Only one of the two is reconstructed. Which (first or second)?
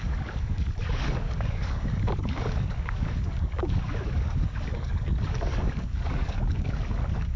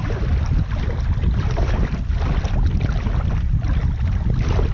first